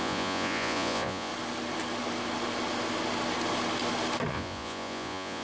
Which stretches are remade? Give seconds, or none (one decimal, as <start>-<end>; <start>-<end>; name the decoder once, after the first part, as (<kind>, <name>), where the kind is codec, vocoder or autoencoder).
0.0-1.3 (vocoder, Vocos); 4.3-5.4